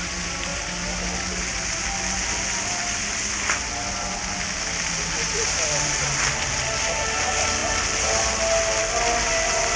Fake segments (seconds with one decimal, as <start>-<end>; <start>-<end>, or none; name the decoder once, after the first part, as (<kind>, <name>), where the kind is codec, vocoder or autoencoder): none

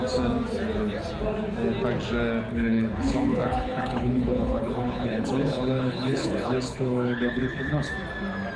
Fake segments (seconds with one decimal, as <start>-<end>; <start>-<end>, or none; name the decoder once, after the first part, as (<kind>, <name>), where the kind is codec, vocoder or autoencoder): 2.5-7.9 (codec, HILCodec)

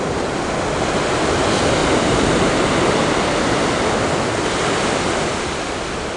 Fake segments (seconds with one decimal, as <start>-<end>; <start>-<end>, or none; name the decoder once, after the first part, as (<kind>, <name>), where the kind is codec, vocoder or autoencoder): none

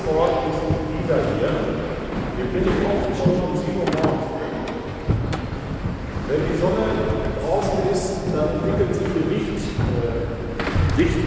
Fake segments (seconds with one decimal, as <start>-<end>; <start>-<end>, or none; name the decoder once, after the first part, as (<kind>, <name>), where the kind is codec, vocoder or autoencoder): 2.5-3.4 (codec, HILCodec)